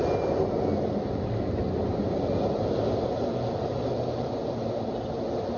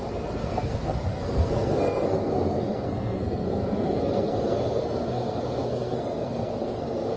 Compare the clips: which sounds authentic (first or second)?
first